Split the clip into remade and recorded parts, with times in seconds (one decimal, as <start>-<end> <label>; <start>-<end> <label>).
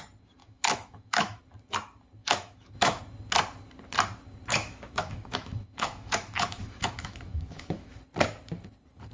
0.0-0.4 recorded; 0.4-1.4 remade; 1.4-2.2 recorded; 2.2-3.0 remade; 3.0-4.5 recorded; 4.5-8.0 remade; 8.0-9.1 recorded